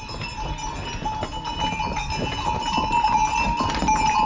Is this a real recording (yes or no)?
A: yes